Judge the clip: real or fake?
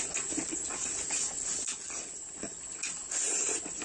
real